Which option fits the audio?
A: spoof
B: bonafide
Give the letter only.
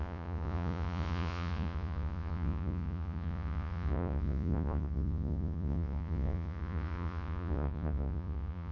A